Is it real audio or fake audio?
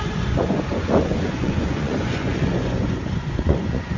fake